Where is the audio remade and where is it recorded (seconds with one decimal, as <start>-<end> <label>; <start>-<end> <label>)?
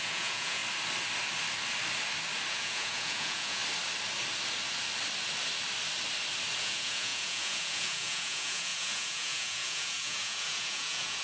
0.0-0.6 remade; 0.6-2.5 recorded; 2.5-3.6 remade; 3.6-6.6 recorded; 6.6-11.2 remade